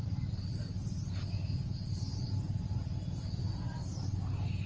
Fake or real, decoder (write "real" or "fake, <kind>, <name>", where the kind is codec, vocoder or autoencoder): real